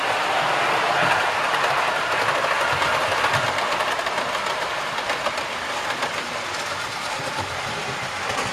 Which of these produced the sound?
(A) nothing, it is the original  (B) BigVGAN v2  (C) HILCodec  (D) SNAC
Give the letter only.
A